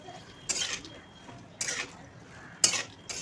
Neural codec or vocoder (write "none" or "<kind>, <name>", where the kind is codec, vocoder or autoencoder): none